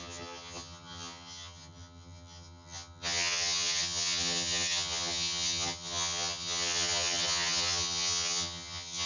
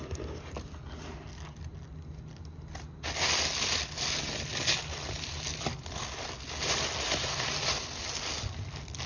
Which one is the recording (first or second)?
second